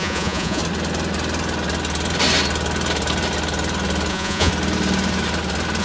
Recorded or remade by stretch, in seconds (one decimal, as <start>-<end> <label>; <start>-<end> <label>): 0.0-0.6 remade; 0.6-4.1 recorded; 4.1-4.5 remade; 4.5-5.8 recorded